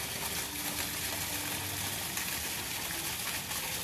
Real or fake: real